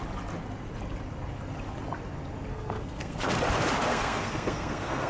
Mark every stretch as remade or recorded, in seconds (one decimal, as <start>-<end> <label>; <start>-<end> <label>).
0.0-2.5 recorded; 2.5-3.2 remade; 3.2-3.9 recorded; 3.9-5.1 remade